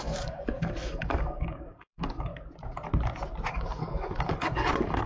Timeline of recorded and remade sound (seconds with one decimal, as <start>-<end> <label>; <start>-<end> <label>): 0.0-2.3 remade; 2.3-3.5 recorded; 3.5-5.1 remade